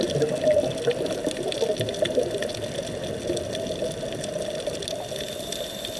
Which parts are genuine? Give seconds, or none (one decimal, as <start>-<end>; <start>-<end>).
0.0-6.0